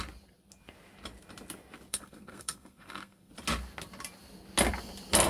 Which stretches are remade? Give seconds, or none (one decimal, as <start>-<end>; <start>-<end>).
1.9-3.3

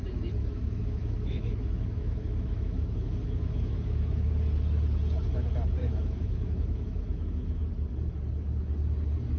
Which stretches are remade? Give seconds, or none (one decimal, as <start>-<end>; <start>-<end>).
0.4-4.3; 5.8-7.6

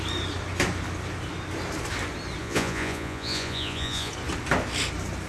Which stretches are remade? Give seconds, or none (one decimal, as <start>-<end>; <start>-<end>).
2.4-4.1